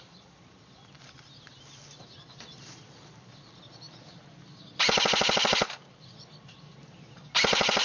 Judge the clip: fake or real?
real